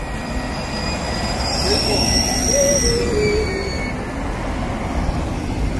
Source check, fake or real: real